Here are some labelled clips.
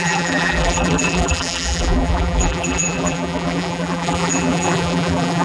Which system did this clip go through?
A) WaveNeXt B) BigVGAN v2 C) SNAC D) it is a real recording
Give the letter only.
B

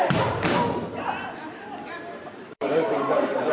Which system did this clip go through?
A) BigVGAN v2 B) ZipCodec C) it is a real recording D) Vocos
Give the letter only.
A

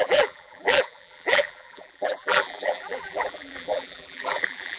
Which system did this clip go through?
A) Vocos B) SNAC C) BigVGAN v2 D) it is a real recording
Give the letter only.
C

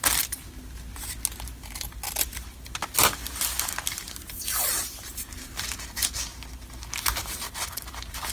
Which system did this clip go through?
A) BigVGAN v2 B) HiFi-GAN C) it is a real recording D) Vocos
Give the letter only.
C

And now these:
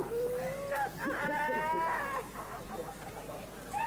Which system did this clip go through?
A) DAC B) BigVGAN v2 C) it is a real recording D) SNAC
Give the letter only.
C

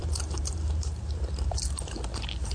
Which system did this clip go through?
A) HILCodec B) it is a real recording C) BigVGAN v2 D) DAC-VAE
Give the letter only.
C